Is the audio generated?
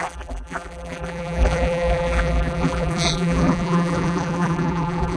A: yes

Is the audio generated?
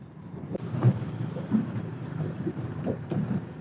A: yes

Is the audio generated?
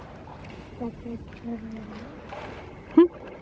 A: yes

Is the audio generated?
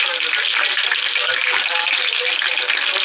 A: no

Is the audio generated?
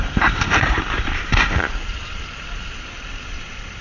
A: yes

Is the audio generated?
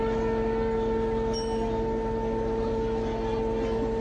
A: no